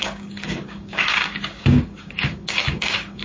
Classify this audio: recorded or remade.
remade